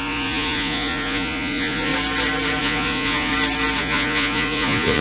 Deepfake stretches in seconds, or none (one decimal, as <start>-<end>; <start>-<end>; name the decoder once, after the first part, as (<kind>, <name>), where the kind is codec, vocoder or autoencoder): 0.0-1.9 (vocoder, Vocos); 2.6-3.3; 3.8-5.0

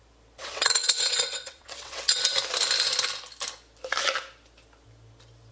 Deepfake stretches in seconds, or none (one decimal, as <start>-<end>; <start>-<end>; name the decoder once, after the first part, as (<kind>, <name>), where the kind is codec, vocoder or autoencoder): 0.4-2.2 (vocoder, WaveNeXt)

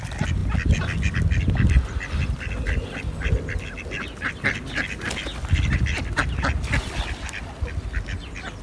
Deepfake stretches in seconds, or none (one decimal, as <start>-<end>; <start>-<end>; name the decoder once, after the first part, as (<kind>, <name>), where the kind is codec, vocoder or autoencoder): 5.3-7.1 (vocoder, BigVGAN v2)

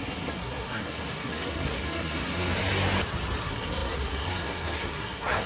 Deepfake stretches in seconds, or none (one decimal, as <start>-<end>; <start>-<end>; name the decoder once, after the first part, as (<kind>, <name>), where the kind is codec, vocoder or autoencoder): 0.0-2.5 (codec, SNAC); 3.4-5.5

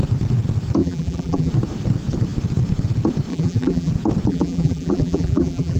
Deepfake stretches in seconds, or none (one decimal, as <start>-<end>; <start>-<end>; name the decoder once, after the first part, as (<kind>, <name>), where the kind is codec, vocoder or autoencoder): 0.8-1.5 (vocoder, BigVGAN v2); 3.3-3.9; 4.3-5.8